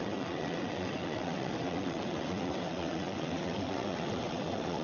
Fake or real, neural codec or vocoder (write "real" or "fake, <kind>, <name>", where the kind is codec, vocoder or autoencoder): fake, vocoder, WaveNeXt